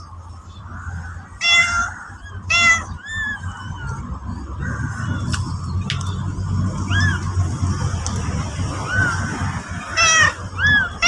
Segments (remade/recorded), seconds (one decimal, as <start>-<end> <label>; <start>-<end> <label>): 0.0-11.1 recorded